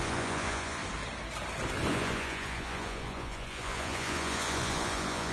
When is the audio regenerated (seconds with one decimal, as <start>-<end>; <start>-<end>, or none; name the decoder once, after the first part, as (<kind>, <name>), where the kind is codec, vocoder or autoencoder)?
0.0-0.8 (vocoder, Vocos); 1.9-5.3